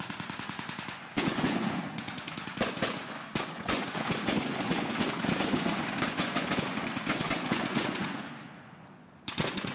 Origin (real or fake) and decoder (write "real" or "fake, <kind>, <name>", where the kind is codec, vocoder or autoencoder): fake, vocoder, Vocos